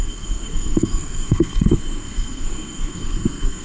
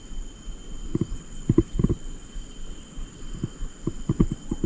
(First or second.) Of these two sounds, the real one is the second